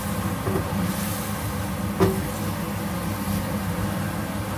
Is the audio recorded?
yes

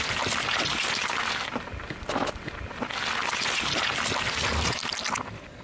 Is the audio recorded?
yes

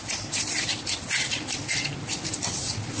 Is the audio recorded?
no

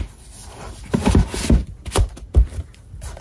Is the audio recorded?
no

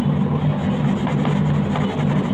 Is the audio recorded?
yes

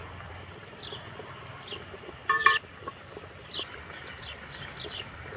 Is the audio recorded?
no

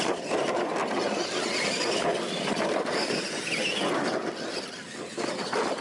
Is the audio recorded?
no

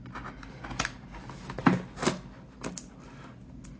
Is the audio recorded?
yes